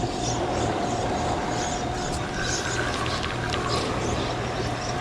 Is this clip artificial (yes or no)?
no